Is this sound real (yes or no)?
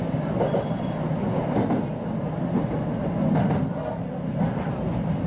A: yes